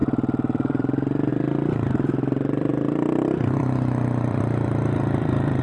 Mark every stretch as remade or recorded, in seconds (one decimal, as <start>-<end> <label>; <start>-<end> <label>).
0.0-5.6 remade